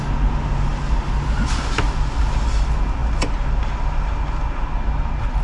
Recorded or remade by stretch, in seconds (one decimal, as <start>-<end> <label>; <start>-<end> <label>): 0.0-5.4 recorded